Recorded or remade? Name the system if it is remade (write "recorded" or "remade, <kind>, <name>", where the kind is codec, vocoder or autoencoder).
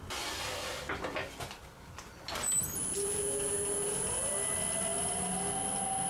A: recorded